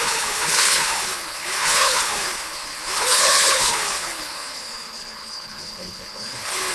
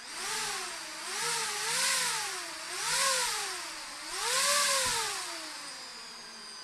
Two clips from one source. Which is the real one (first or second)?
second